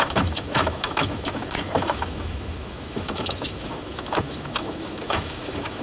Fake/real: fake